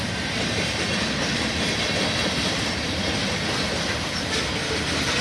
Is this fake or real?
real